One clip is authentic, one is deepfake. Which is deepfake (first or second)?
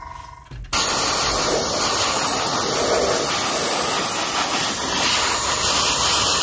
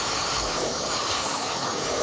second